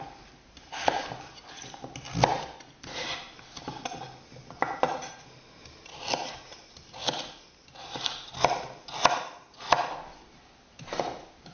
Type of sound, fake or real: real